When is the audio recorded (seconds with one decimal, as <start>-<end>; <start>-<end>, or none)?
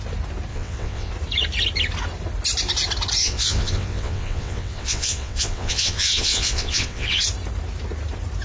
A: 0.0-0.5; 1.1-3.2; 7.2-8.4